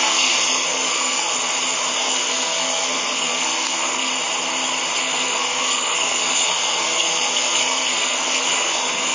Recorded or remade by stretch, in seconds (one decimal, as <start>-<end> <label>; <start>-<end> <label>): 0.0-1.3 remade; 1.3-1.9 recorded; 1.9-4.1 remade; 4.1-5.0 recorded; 5.0-9.1 remade

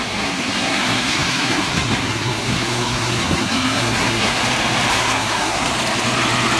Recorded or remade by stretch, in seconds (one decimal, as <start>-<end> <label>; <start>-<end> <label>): 0.0-4.4 remade; 4.4-4.9 recorded; 4.9-5.7 remade; 5.7-6.6 recorded

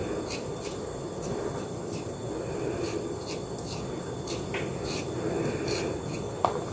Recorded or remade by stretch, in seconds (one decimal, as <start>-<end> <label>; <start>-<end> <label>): 0.0-6.7 recorded

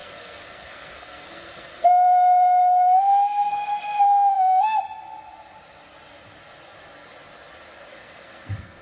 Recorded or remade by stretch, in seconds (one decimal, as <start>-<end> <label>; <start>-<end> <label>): 0.0-4.8 remade; 4.8-7.9 recorded; 7.9-8.8 remade

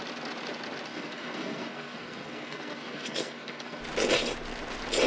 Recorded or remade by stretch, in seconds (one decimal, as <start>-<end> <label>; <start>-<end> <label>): 0.0-0.9 recorded; 0.9-3.8 remade; 3.8-5.1 recorded

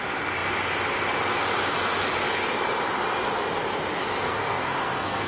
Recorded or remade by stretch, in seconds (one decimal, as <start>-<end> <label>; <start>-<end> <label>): 0.0-4.2 recorded; 4.2-5.3 remade

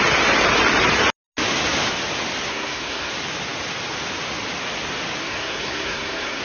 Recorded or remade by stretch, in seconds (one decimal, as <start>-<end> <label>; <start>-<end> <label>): 0.0-2.5 recorded; 2.5-3.1 remade; 3.1-5.2 recorded; 5.2-6.4 remade